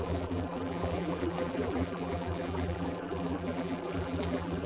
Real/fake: fake